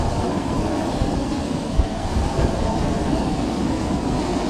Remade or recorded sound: remade